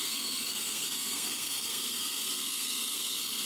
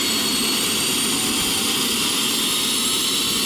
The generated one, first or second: first